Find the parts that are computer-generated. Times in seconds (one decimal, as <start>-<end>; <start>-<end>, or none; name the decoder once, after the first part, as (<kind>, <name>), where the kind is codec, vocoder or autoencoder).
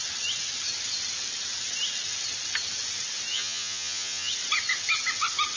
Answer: 3.3-4.3 (vocoder, Vocos)